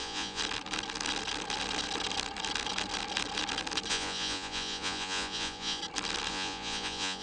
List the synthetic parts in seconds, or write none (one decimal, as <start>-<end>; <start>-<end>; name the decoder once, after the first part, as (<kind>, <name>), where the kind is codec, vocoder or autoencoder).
0.0-0.4 (vocoder, Vocos); 3.9-5.8; 6.3-7.2